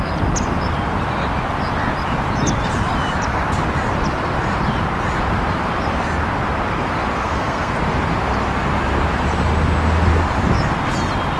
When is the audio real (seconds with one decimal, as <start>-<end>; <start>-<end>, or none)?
0.0-7.2; 7.7-11.4